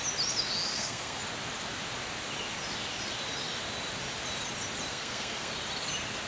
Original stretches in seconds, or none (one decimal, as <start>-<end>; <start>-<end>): 0.0-0.7; 1.2-4.9; 5.5-6.3